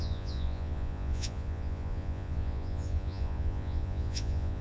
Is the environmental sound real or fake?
fake